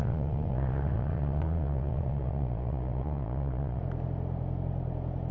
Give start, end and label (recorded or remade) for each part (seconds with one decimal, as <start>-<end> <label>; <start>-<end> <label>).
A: 0.0-3.8 remade; 3.8-5.3 recorded